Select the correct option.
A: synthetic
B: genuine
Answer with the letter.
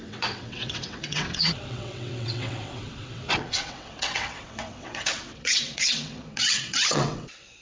A